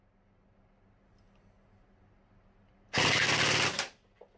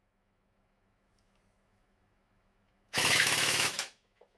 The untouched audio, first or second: first